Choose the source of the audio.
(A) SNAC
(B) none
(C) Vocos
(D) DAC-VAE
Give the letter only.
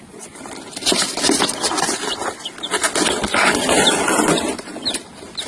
B